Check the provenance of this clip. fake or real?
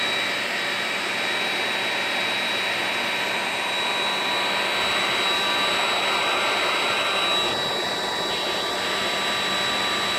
real